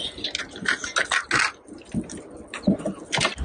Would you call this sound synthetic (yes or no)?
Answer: no